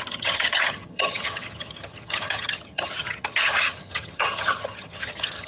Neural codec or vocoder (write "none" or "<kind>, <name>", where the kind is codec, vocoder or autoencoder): vocoder, HiFi-GAN